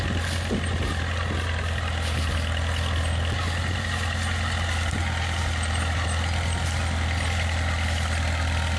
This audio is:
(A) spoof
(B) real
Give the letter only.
B